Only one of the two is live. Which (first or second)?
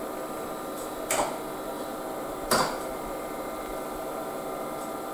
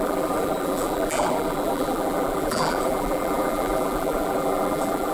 first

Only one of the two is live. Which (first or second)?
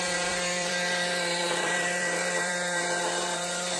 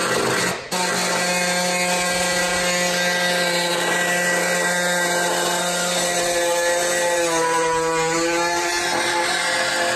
second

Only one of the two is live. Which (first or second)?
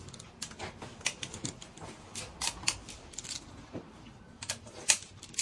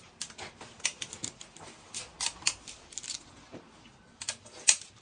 second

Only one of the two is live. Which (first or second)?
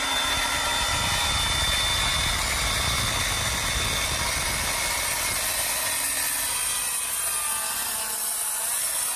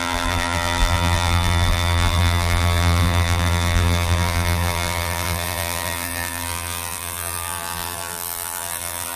first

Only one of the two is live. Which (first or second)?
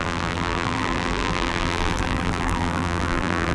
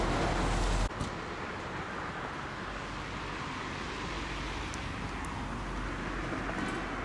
second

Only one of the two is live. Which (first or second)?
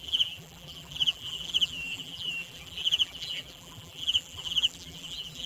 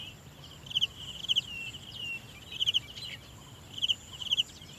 second